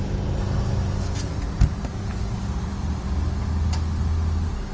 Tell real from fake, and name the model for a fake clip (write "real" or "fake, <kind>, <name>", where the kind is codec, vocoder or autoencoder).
real